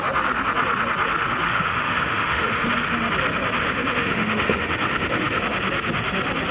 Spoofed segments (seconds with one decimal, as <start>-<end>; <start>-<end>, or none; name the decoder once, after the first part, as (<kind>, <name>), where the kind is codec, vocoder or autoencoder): 1.5-2.6 (autoencoder, DAC-VAE); 3.6-5.4